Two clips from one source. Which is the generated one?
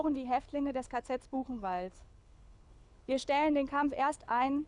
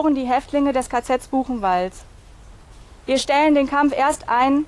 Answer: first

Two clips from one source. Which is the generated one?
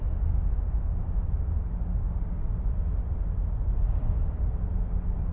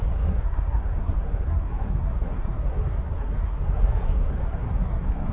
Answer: second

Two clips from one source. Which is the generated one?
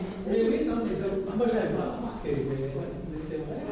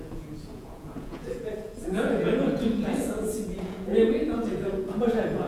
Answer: second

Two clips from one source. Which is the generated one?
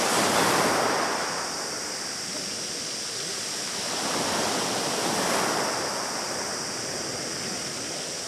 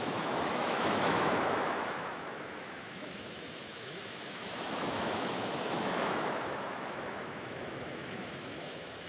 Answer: second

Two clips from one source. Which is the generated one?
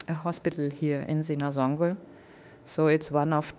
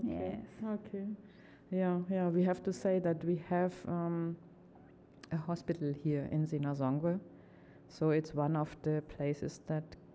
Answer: first